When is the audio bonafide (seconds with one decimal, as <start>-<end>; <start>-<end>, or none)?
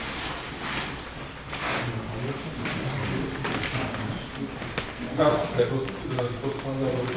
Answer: 0.0-4.9; 5.7-7.2